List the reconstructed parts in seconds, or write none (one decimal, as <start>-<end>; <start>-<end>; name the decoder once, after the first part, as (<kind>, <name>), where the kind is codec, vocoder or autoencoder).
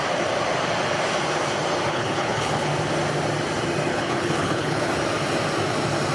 1.9-2.7 (codec, HILCodec); 3.9-4.9